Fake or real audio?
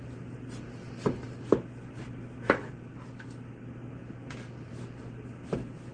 real